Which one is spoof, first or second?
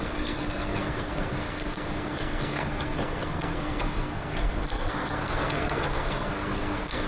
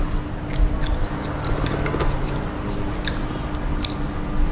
first